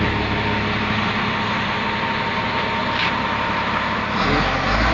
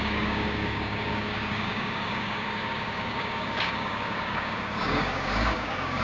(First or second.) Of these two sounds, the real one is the first